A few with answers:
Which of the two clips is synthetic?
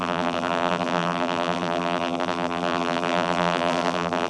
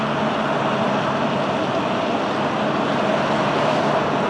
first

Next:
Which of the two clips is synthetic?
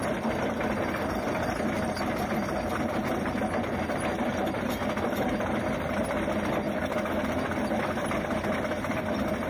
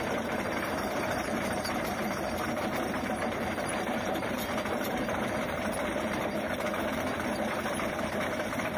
second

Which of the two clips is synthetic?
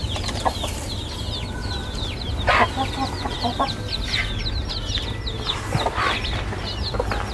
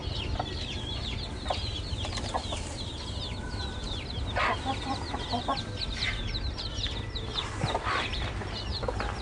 second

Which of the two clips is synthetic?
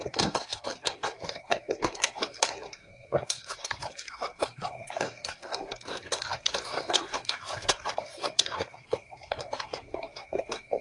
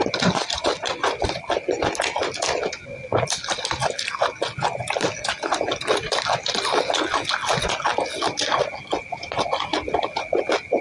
first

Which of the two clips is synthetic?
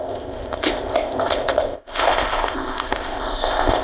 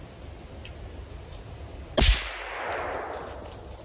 first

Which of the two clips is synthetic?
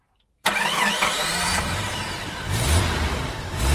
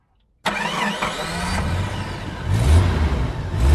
first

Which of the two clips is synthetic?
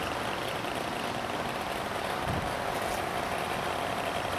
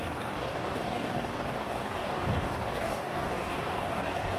second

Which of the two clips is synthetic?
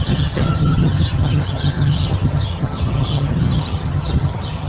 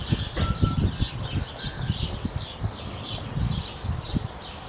first